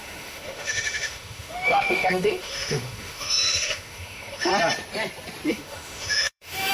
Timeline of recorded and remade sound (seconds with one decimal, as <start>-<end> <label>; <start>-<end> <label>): 0.0-4.5 remade; 4.5-5.5 recorded; 5.5-6.7 remade